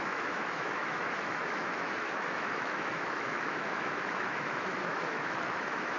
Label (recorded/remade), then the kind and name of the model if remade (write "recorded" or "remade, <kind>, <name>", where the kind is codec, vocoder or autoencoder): remade, autoencoder, DAC-VAE